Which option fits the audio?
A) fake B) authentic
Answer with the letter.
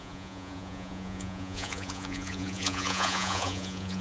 A